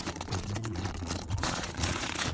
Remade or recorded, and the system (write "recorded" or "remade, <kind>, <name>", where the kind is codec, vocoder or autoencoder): remade, vocoder, Vocos